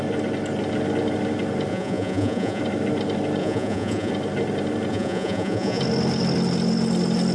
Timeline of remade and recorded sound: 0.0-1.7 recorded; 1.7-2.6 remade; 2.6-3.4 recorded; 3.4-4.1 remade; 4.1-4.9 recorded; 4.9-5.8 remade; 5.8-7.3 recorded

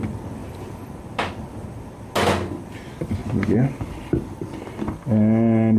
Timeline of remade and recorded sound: 0.0-5.8 recorded

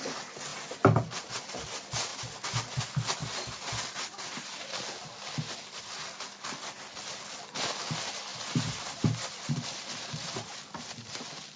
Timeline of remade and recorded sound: 0.0-8.3 recorded; 8.3-11.2 remade; 11.2-11.6 recorded